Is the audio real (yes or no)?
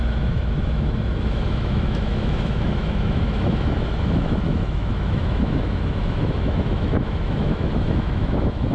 no